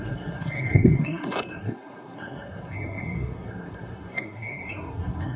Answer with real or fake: fake